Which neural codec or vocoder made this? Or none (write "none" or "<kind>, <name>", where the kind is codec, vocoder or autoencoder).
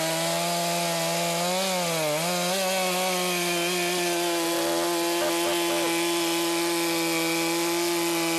none